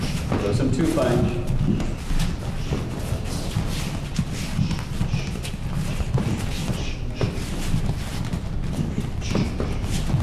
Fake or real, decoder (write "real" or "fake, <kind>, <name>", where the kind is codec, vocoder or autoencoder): real